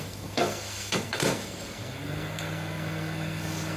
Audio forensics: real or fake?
fake